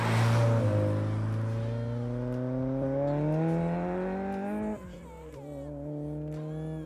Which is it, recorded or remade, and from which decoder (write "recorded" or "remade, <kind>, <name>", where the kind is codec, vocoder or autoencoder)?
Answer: recorded